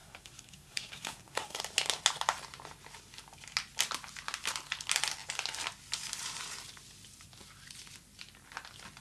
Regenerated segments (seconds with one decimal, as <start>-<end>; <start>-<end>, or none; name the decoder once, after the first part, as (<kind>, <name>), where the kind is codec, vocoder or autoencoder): 0.0-1.6 (codec, SNAC)